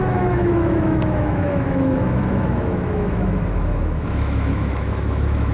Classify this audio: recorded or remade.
remade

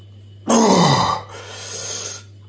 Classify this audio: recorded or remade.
recorded